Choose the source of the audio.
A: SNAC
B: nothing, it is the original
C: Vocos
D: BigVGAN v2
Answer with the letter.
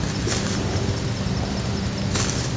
B